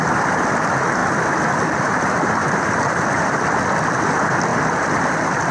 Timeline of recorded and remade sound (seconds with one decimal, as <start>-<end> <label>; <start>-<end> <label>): 0.0-2.4 recorded; 2.4-3.4 remade; 3.4-5.5 recorded